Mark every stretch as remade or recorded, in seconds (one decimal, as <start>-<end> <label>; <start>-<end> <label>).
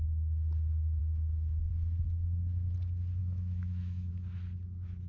0.0-3.2 recorded; 3.2-4.1 remade; 4.1-5.1 recorded